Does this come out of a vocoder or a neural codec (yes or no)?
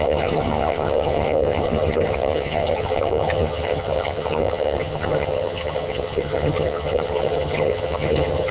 yes